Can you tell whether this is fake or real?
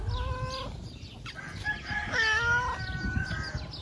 real